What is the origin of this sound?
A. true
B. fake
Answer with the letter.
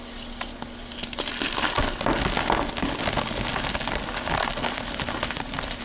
A